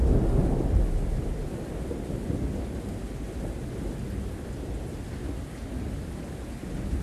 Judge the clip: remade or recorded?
recorded